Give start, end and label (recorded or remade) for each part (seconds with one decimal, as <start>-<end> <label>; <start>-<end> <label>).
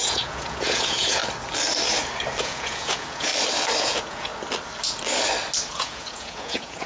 0.0-1.2 remade; 1.2-2.4 recorded; 2.4-3.3 remade; 3.3-3.8 recorded; 3.8-4.3 remade; 4.3-5.7 recorded; 5.7-6.9 remade